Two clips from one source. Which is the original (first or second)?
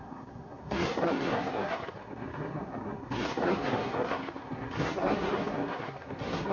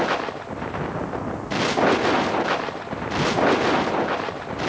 second